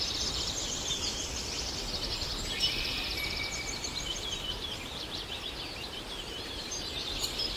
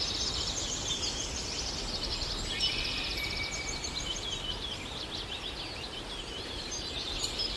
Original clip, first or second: second